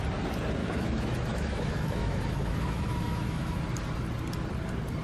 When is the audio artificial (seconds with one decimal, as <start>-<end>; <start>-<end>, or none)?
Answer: 0.6-3.6